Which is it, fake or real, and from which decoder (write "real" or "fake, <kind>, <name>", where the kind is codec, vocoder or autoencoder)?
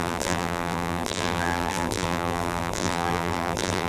fake, vocoder, BigVGAN v2